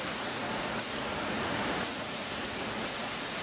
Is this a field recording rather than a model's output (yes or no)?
no